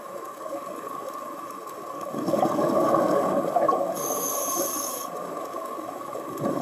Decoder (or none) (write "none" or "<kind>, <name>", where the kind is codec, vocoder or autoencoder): codec, DAC